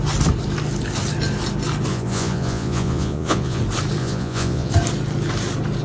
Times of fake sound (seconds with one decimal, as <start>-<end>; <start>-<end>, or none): 1.9-3.6; 4.0-4.7